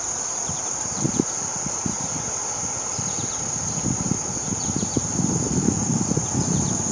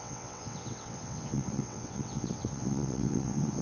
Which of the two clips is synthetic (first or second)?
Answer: second